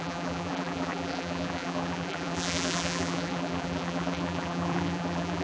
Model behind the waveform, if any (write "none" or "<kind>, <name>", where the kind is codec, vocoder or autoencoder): vocoder, BigVGAN v2